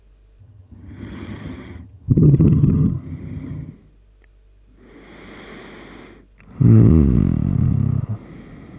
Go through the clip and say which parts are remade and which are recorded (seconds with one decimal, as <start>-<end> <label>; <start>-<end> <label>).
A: 0.0-0.4 recorded; 0.4-3.7 remade; 3.7-8.8 recorded